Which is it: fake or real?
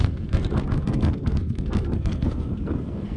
fake